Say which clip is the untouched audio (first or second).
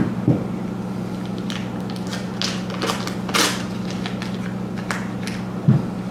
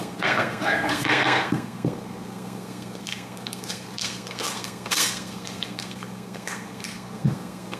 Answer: first